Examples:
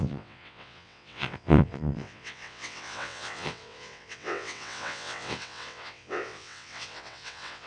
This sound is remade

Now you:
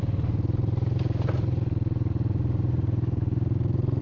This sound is recorded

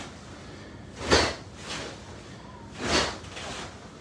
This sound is recorded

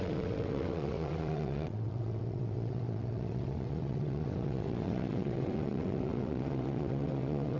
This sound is remade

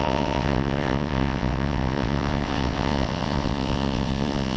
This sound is remade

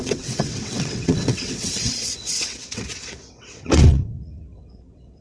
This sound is remade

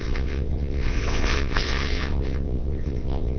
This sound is remade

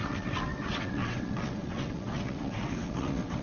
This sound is remade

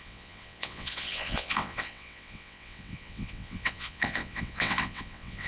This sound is remade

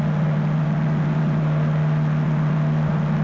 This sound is recorded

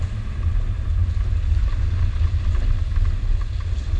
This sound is recorded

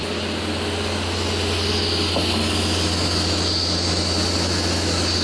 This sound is recorded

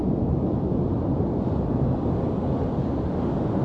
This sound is recorded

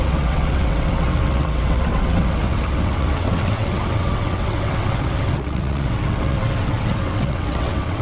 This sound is remade